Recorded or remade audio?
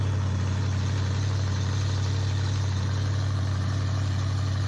recorded